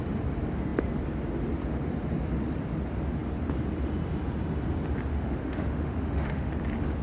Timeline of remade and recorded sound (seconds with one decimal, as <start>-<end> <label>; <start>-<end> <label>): 0.0-5.1 recorded; 5.1-6.5 remade; 6.5-7.0 recorded

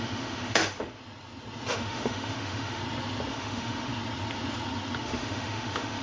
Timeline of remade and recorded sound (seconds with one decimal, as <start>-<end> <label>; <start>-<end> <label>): 0.0-1.0 remade; 1.0-1.7 recorded; 1.7-2.8 remade; 2.8-3.3 recorded; 3.3-3.9 remade; 3.9-5.0 recorded; 5.0-6.0 remade

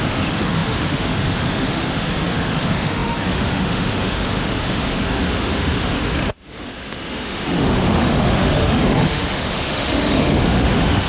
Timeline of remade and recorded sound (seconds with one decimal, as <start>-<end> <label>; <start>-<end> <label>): 0.0-11.1 remade

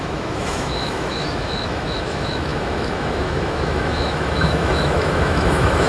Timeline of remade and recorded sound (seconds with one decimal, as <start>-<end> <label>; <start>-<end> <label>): 0.0-5.9 remade